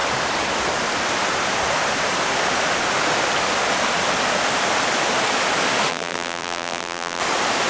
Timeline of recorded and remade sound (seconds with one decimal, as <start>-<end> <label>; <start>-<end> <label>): 0.0-5.9 recorded; 5.9-7.2 remade; 7.2-7.7 recorded